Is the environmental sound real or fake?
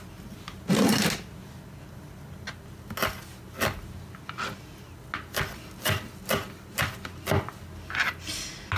real